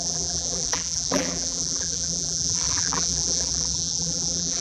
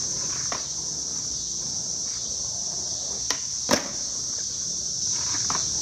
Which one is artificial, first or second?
first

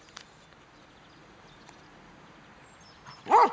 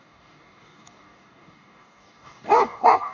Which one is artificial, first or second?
second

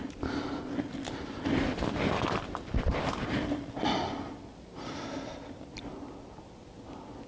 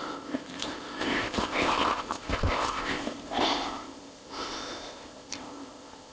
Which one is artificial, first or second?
second